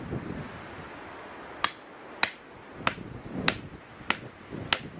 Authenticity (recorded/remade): recorded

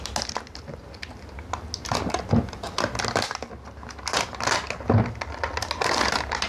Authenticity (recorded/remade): recorded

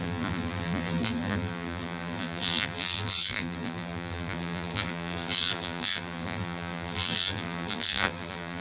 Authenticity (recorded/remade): remade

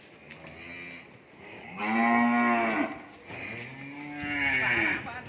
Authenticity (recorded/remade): recorded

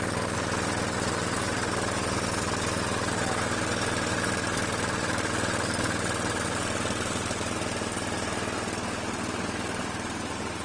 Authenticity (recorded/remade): remade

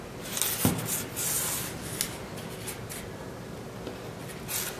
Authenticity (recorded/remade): recorded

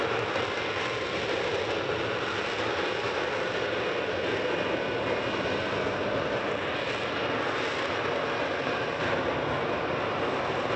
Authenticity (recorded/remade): recorded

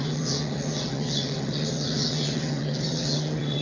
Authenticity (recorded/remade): remade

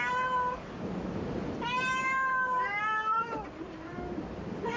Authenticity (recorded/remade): recorded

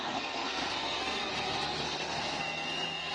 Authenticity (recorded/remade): remade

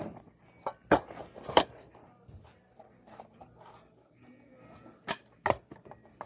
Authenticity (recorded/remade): recorded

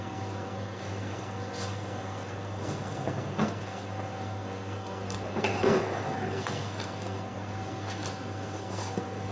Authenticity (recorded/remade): remade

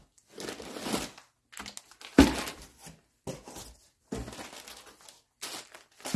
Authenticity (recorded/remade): recorded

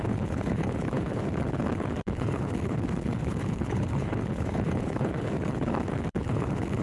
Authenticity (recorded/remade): remade